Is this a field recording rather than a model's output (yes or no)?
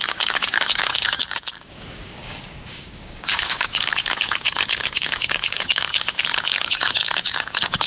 no